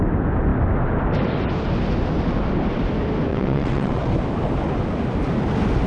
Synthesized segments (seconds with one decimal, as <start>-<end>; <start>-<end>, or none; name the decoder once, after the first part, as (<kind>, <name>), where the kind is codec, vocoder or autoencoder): 3.3-4.1 (vocoder, WaveNeXt)